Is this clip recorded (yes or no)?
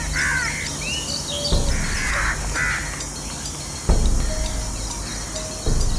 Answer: yes